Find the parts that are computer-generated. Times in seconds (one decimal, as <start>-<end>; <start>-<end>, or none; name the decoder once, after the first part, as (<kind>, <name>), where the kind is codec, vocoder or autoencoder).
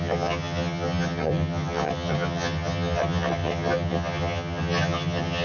0.0-5.4 (vocoder, HiFi-GAN)